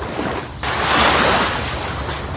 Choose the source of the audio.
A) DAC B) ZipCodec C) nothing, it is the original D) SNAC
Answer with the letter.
C